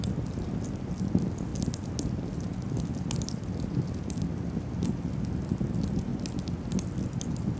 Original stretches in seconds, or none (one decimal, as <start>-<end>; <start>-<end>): 0.0-7.6

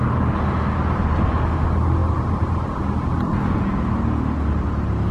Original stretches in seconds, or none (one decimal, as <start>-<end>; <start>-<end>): 0.0-5.1